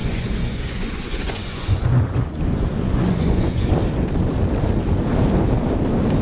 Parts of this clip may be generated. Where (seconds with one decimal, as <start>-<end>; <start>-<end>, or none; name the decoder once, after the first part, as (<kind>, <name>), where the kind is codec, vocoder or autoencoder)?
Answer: 0.0-3.7 (vocoder, Vocos)